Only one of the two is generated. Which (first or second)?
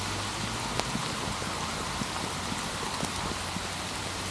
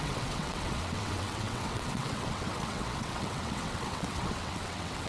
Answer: second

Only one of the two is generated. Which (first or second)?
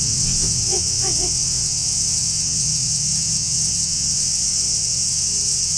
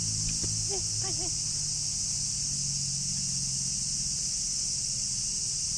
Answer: first